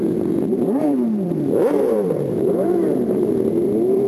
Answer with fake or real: fake